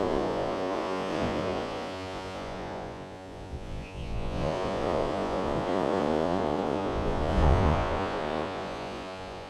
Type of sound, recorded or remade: remade